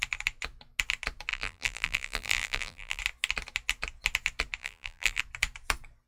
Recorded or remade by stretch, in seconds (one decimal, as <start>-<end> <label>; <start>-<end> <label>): 0.0-1.3 recorded; 1.3-3.0 remade; 3.0-4.6 recorded; 4.6-5.2 remade; 5.2-6.1 recorded